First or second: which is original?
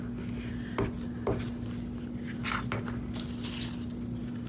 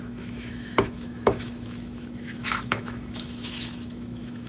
first